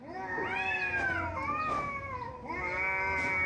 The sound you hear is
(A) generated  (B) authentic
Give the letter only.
B